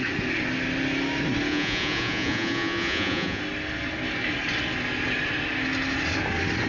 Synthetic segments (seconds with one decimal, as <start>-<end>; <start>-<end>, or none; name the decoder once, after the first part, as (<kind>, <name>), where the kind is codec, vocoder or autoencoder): 1.5-3.4 (vocoder, Vocos)